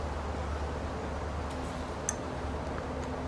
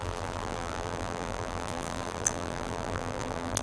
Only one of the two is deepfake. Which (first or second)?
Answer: second